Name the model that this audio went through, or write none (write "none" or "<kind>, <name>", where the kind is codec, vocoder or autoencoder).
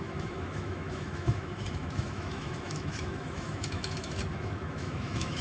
autoencoder, DAC-VAE